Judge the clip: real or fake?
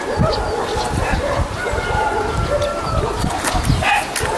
real